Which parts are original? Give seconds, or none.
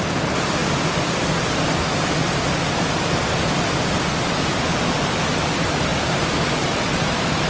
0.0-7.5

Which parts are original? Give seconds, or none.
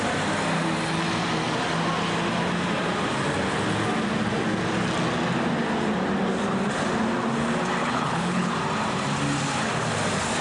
0.0-7.8; 8.5-10.4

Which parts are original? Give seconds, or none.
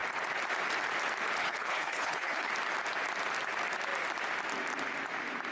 0.0-1.4; 2.5-5.5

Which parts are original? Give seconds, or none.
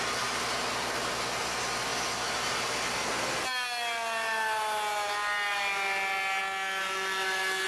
0.0-7.7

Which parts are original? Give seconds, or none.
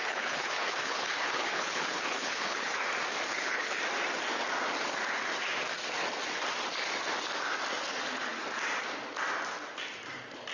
2.8-3.3; 3.8-10.5